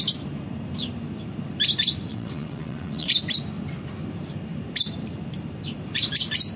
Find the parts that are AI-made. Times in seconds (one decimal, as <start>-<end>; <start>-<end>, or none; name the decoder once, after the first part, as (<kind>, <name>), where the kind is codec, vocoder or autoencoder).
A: 2.1-3.1 (vocoder, WaveNeXt)